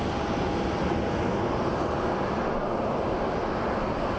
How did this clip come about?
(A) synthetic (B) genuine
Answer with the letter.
B